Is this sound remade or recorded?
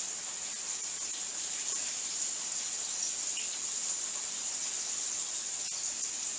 recorded